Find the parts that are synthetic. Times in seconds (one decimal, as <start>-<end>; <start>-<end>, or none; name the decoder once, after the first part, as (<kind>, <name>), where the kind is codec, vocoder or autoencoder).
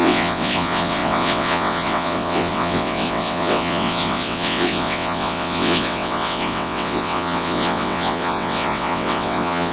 0.0-9.7 (vocoder, WaveNeXt)